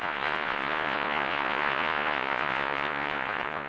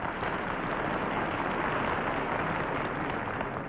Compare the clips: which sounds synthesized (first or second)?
first